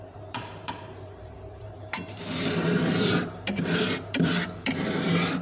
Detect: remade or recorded remade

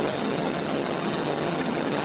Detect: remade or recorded remade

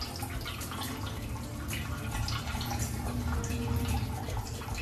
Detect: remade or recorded recorded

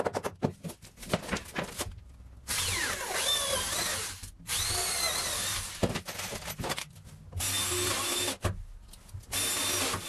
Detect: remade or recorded recorded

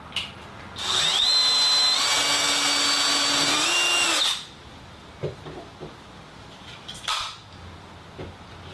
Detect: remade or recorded recorded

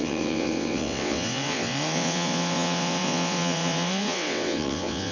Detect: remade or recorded remade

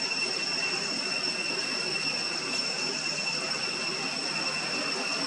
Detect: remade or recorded recorded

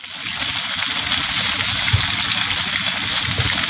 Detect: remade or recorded recorded